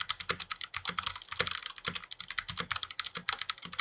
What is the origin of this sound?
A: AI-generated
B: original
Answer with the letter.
B